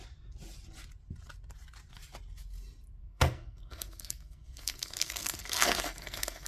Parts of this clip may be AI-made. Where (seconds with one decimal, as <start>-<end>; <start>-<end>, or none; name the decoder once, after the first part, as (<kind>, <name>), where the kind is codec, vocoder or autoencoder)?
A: 3.0-6.5 (codec, SNAC)